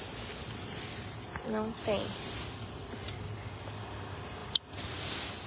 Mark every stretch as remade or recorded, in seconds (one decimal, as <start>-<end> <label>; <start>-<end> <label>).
0.0-5.5 recorded